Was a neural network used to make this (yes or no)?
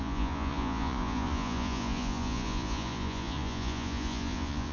yes